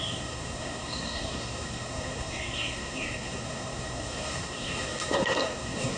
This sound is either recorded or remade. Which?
remade